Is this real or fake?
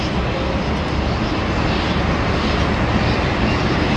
real